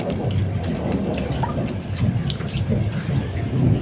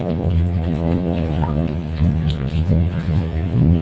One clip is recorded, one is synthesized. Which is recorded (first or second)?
first